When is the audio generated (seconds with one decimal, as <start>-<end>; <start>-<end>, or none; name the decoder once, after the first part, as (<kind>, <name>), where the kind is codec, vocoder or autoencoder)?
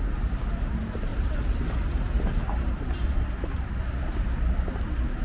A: 1.1-4.2 (vocoder, BigVGAN v2)